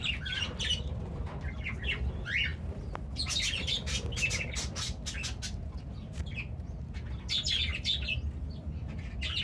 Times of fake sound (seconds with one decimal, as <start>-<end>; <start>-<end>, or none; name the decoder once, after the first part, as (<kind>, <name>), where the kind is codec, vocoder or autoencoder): none